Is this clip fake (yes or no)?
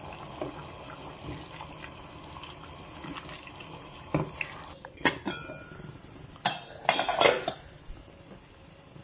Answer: no